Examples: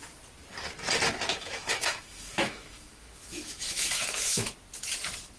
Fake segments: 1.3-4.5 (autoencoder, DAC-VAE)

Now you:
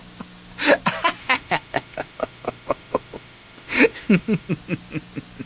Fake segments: 1.2-4.5 (autoencoder, DAC-VAE)

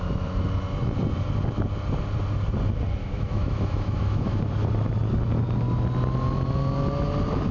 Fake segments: 3.0-4.4 (autoencoder, DAC-VAE)

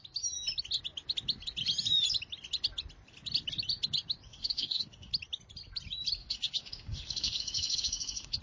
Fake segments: 4.3-5.1 (autoencoder, DAC-VAE); 6.2-8.4

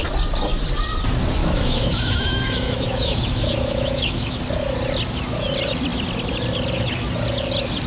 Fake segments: 1.4-4.4 (autoencoder, DAC-VAE)

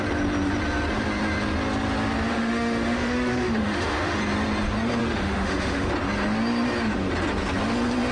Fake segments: 2.3-4.2 (autoencoder, DAC-VAE); 5.0-5.9

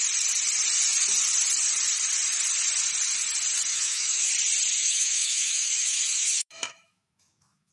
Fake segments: 3.7-4.3 (autoencoder, DAC-VAE); 4.8-7.7